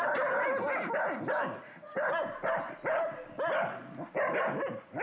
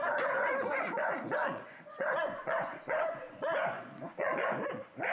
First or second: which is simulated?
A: second